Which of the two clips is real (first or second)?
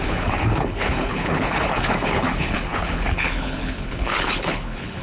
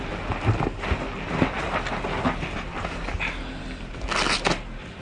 second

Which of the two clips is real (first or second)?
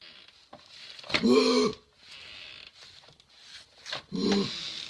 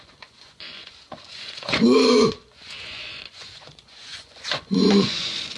first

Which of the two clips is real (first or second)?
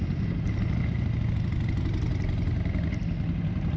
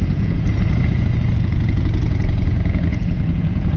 first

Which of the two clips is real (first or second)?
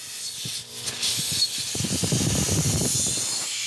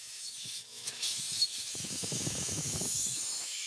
first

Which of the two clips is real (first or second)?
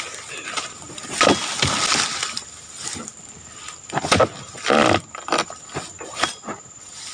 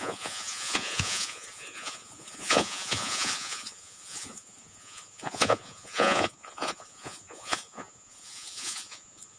first